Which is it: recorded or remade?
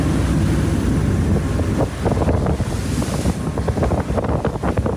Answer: recorded